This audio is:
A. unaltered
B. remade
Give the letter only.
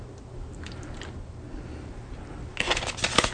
A